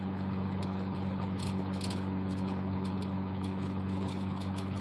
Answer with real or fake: fake